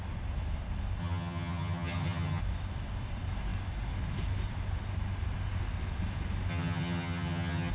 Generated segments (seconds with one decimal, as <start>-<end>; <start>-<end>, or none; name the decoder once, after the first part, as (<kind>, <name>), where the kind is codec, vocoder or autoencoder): 1.0-2.4 (vocoder, HiFi-GAN); 6.5-7.7